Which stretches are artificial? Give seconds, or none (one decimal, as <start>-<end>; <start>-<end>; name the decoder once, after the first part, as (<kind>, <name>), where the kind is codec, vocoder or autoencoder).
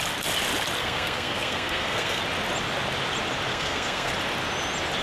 0.8-2.2 (codec, SNAC); 3.5-4.1